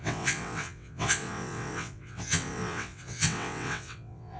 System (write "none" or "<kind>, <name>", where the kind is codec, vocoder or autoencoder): vocoder, WaveNeXt